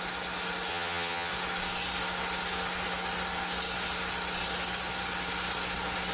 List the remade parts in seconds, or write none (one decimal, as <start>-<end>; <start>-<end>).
0.7-1.3